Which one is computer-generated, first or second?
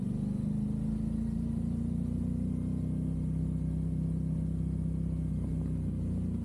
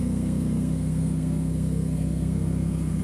second